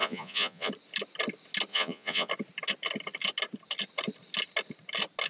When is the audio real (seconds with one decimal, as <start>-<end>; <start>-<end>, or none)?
0.7-1.7; 2.3-5.3